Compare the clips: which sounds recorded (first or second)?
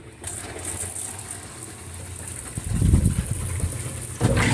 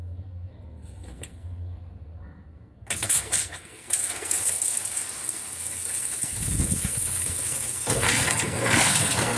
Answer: first